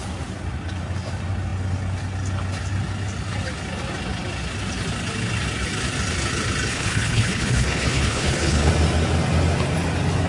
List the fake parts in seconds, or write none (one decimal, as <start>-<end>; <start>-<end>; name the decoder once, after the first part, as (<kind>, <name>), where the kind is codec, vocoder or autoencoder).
6.7-8.7 (codec, HILCodec)